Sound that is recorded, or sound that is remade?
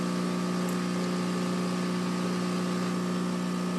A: recorded